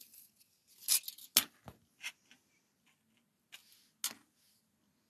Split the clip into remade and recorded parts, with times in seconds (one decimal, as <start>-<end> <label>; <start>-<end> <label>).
0.0-5.1 recorded